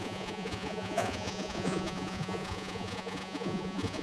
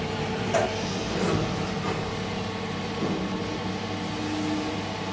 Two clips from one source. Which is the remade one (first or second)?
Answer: first